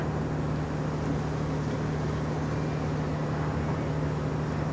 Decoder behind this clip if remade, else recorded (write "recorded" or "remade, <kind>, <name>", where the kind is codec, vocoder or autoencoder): recorded